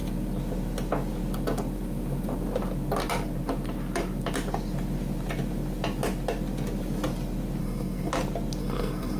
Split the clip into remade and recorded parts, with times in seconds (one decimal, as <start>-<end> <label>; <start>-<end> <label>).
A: 0.0-7.6 recorded; 7.6-8.1 remade; 8.1-8.6 recorded; 8.6-9.2 remade